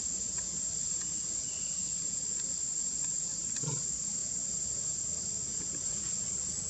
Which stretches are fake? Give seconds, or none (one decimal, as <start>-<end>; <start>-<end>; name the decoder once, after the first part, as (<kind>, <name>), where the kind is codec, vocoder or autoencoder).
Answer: none